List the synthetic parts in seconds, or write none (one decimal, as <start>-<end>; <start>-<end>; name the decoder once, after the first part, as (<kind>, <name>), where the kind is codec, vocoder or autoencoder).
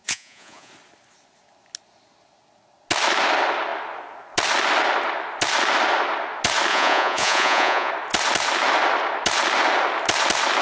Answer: 0.0-0.7 (vocoder, Vocos); 6.7-7.9